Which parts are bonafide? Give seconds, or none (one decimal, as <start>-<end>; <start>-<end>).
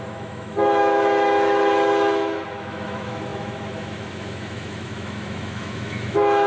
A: none